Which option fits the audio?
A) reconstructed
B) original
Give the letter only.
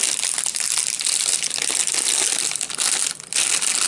B